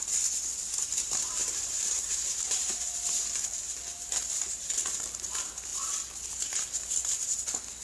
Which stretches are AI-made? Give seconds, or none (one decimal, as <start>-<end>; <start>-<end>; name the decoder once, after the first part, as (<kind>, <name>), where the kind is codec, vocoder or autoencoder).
1.4-2.8 (vocoder, BigVGAN v2)